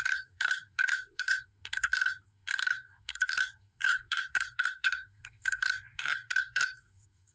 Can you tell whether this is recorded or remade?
remade